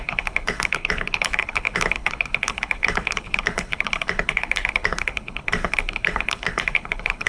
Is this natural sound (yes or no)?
no